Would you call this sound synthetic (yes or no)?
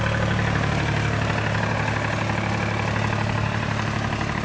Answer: no